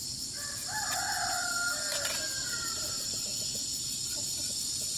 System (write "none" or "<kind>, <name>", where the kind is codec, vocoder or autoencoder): none